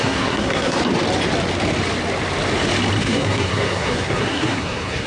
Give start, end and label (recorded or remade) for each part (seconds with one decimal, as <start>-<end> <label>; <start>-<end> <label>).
0.0-0.8 remade; 0.8-3.0 recorded; 3.0-5.1 remade